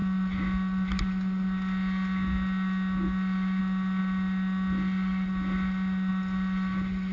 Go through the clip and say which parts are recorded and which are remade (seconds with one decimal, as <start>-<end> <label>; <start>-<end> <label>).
0.0-7.1 recorded